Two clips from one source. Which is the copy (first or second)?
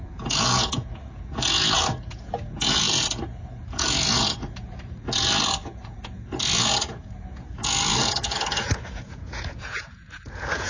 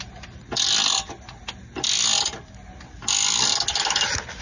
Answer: first